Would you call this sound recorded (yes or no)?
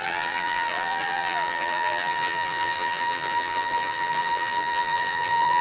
no